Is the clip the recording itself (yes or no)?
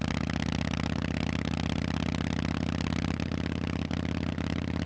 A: yes